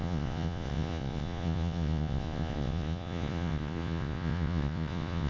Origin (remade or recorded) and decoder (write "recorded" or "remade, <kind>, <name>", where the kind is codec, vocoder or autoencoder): remade, vocoder, Vocos